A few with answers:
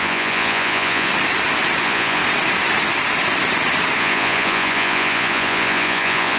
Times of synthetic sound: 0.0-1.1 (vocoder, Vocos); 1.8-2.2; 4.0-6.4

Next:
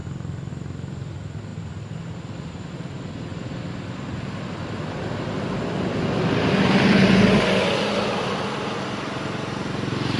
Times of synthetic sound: none